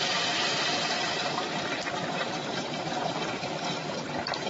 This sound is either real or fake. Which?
fake